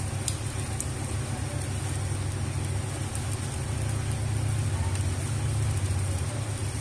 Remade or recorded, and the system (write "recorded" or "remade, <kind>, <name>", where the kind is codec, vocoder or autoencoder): recorded